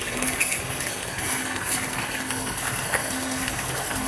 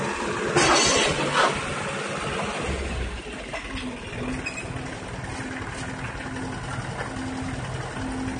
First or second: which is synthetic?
first